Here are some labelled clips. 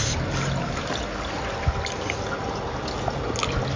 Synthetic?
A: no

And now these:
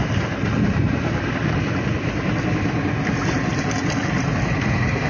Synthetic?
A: no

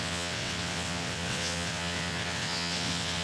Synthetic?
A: yes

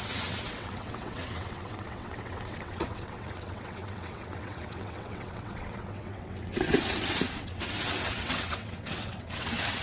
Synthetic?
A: yes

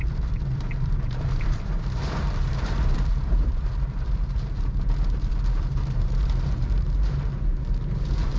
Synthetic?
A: yes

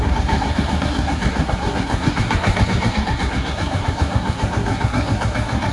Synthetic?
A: yes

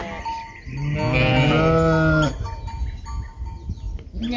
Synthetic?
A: no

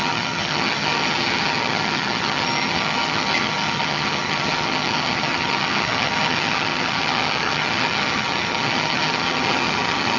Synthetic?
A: yes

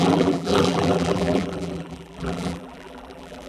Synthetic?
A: yes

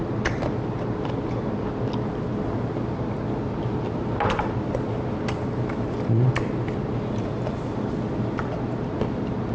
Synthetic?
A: no